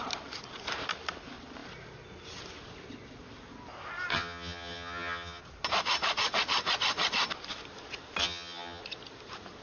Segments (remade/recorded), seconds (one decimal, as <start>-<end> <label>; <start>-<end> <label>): 0.0-4.1 recorded; 4.1-5.4 remade; 5.4-8.2 recorded; 8.2-8.8 remade; 8.8-9.6 recorded